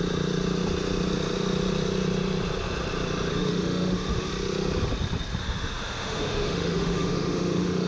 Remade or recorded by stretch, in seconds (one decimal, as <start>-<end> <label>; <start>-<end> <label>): 0.0-3.3 recorded; 3.3-4.3 remade; 4.3-5.4 recorded; 5.4-7.9 remade